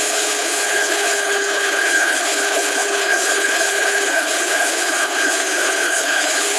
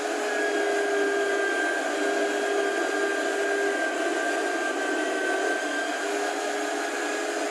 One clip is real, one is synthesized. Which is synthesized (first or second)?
first